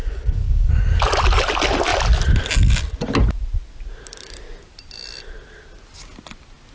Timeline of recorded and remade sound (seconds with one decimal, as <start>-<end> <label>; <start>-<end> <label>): 0.0-0.7 remade; 0.7-6.7 recorded